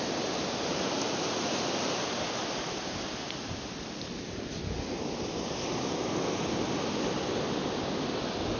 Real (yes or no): yes